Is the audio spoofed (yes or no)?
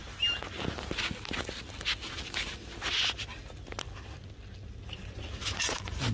no